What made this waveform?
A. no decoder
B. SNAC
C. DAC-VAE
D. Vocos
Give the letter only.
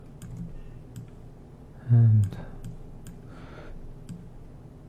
A